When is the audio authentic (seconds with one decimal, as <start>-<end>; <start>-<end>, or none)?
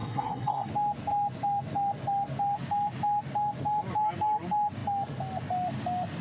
0.7-6.2